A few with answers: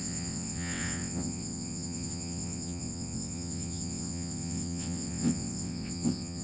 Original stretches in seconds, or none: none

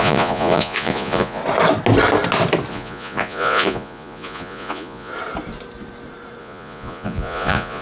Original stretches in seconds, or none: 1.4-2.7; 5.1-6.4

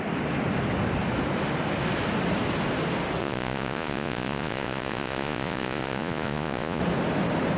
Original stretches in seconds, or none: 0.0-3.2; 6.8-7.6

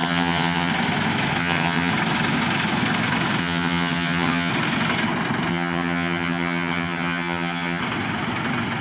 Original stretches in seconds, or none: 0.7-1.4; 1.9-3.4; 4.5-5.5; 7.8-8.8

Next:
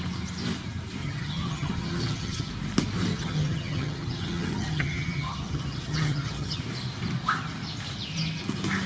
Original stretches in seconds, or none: 0.0-1.0; 2.5-3.1; 6.6-8.9

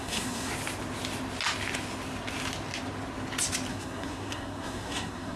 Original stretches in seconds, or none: 0.5-3.7

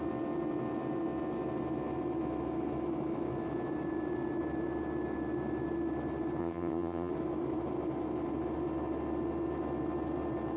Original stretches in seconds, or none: 0.0-6.4; 7.1-10.6

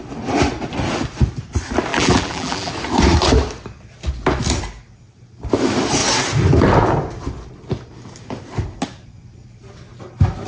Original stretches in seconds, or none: 0.0-1.9; 2.7-10.5